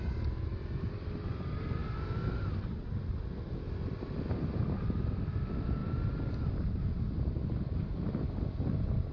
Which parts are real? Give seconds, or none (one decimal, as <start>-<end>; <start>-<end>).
0.0-9.1